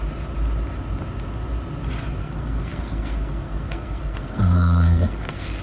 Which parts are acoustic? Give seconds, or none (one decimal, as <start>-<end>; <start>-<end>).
0.0-2.2